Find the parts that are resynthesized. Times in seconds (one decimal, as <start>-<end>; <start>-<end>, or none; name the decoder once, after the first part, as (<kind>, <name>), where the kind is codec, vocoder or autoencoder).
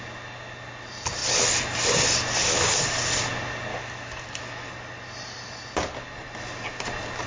3.7-4.7 (autoencoder, DAC-VAE)